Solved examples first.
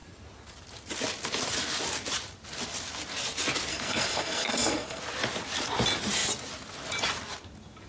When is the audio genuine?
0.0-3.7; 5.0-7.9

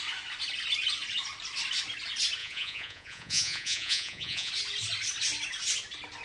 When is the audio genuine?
0.0-2.4; 4.5-6.2

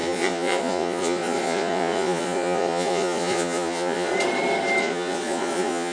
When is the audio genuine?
4.1-4.8

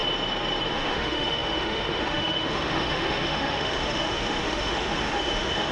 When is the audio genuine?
0.0-0.7

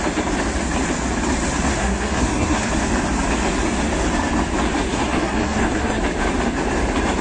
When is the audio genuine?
0.0-1.7; 2.7-4.9; 6.0-7.2

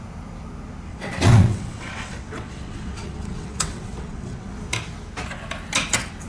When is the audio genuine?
0.0-0.9; 4.5-6.3

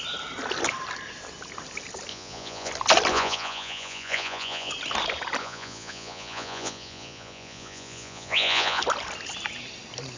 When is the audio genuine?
0.0-2.1; 2.7-3.1; 4.7-5.4; 8.8-10.2

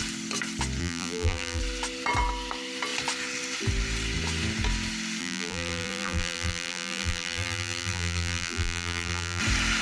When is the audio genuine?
0.0-0.8; 1.6-5.2; 9.4-9.8